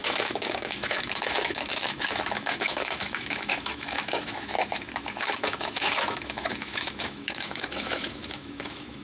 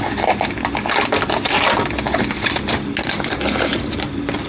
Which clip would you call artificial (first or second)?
first